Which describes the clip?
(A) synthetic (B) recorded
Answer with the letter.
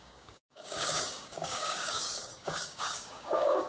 A